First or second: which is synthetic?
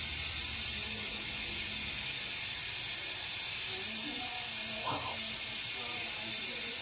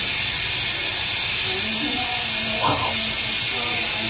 first